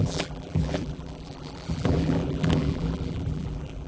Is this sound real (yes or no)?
no